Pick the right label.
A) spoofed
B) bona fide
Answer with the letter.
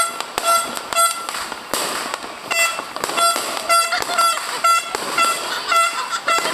B